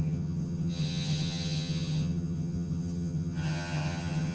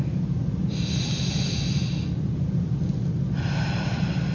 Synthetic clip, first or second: first